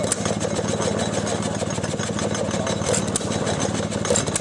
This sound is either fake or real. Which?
real